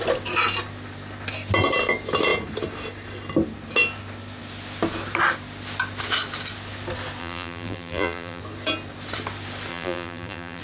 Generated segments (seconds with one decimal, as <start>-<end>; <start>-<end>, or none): 7.2-8.4; 9.7-10.6

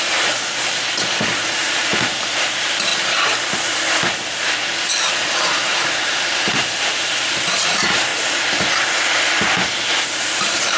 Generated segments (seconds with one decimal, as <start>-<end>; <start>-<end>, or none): 0.0-2.9; 5.3-8.1; 9.8-10.8

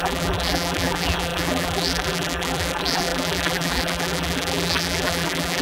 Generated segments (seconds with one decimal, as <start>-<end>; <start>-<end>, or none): 0.0-5.6

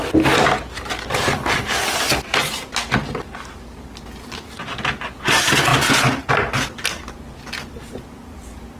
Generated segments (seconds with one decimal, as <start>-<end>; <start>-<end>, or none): none

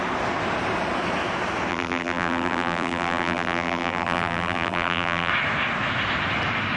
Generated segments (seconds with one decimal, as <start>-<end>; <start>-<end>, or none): 1.7-5.3